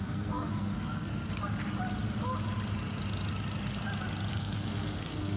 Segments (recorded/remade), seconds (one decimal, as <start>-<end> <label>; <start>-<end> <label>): 0.0-1.1 remade; 1.1-4.3 recorded; 4.3-5.4 remade